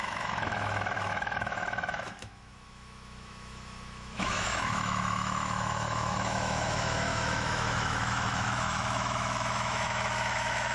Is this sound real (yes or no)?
no